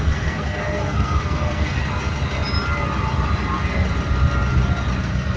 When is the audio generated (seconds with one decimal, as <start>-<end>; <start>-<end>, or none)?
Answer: 0.0-1.8; 5.0-5.4